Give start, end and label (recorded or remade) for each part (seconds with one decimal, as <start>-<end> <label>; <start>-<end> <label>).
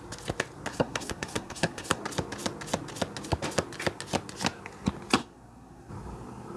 0.0-0.7 recorded; 0.7-2.0 remade; 2.0-5.2 recorded; 5.2-5.9 remade; 5.9-6.6 recorded